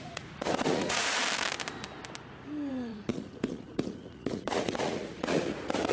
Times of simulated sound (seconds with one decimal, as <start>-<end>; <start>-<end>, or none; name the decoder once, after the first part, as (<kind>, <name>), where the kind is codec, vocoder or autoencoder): 0.0-1.2 (vocoder, Vocos); 2.7-5.9

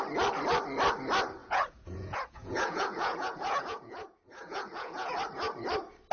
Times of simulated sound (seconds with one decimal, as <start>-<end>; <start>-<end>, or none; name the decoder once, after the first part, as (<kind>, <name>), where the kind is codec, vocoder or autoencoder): 1.4-5.1 (vocoder, Vocos)

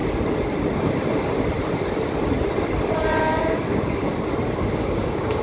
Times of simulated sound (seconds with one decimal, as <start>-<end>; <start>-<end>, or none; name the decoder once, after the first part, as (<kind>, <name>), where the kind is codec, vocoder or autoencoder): 3.2-4.1 (codec, DAC); 4.6-5.4

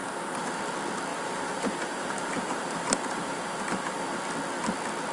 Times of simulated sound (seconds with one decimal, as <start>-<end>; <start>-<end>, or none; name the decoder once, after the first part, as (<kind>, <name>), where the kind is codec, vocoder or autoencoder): 0.0-0.6 (vocoder, BigVGAN v2); 1.1-4.2

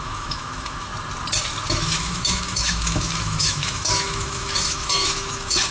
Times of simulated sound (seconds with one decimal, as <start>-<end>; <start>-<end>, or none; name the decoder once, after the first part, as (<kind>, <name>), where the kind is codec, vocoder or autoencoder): 0.0-0.9 (autoencoder, DAC-VAE); 1.7-5.7

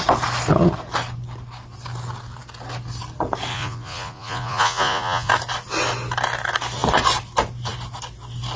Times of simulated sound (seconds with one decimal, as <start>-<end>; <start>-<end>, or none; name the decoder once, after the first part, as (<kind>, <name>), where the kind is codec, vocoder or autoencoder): 3.5-5.3 (vocoder, Vocos)